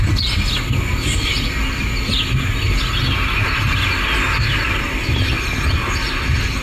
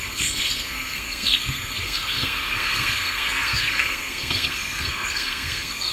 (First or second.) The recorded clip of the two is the first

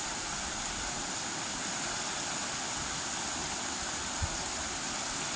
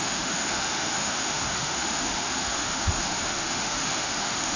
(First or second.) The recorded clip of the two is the first